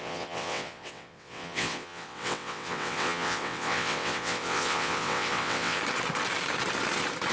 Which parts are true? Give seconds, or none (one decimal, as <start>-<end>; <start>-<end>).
5.8-7.3